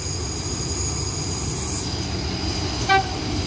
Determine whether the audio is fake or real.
real